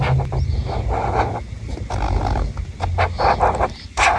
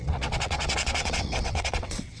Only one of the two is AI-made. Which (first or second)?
second